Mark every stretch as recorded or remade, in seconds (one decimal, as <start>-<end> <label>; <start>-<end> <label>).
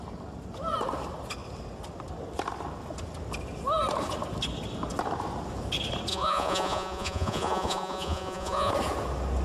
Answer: 0.0-6.1 recorded; 6.1-8.7 remade; 8.7-9.4 recorded